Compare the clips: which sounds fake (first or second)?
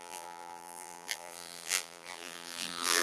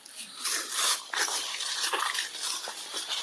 first